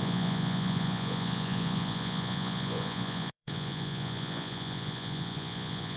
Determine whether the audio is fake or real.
fake